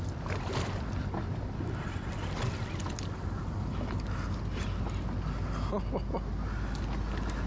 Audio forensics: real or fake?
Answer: real